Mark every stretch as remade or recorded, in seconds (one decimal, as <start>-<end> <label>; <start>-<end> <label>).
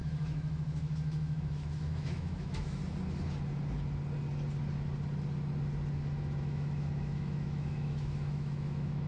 0.0-2.8 remade; 2.8-6.4 recorded; 6.4-9.1 remade